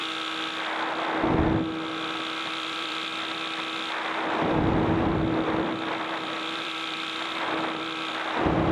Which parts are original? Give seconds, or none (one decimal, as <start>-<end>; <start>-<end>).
0.0-2.4; 3.1-4.3